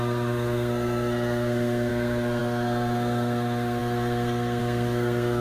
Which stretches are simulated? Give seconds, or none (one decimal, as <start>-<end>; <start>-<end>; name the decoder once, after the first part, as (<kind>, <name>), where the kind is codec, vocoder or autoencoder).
0.0-5.4 (codec, SNAC)